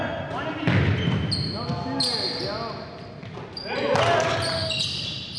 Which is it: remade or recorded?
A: recorded